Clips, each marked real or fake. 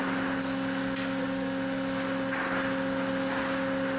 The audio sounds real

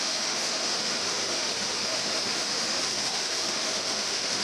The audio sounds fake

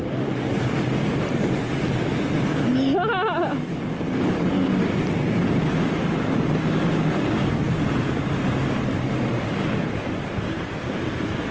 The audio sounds real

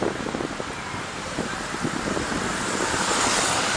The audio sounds fake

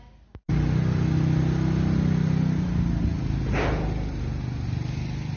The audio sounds real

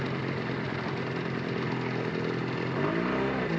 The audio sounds real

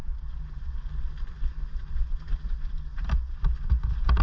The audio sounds real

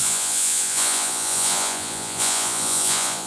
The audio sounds fake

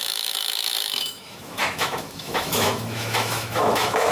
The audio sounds fake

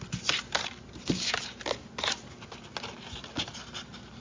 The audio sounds real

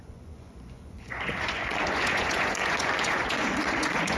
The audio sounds fake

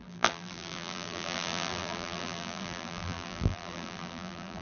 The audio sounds fake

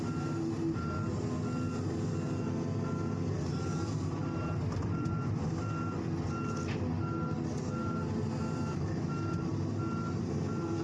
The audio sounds real